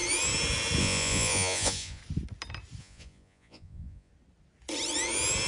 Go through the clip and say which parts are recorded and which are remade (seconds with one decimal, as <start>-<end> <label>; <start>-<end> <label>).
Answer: 0.0-0.8 recorded; 0.8-2.0 remade; 2.0-2.8 recorded; 2.8-4.1 remade; 4.1-5.5 recorded